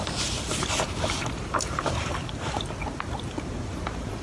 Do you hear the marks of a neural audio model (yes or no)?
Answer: no